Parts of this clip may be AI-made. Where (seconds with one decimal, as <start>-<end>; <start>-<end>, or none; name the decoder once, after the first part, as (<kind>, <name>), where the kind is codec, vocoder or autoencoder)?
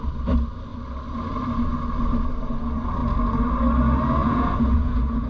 4.2-5.3 (vocoder, Vocos)